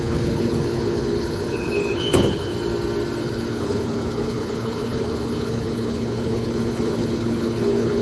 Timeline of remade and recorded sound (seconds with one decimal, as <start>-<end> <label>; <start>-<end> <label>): 0.0-2.5 remade; 2.5-3.2 recorded; 3.2-8.0 remade